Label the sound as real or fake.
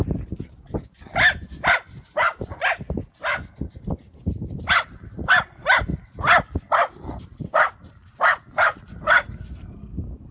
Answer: real